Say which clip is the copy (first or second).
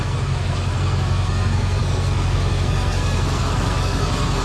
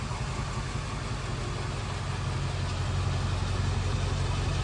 first